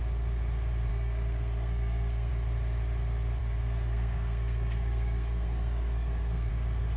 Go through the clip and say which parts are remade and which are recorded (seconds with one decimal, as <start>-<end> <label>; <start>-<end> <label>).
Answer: 0.0-0.9 recorded; 0.9-2.3 remade; 2.3-3.4 recorded; 3.4-6.5 remade; 6.5-7.0 recorded